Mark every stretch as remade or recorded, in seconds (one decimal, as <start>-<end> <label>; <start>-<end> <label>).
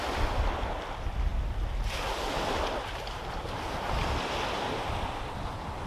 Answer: 0.0-5.9 recorded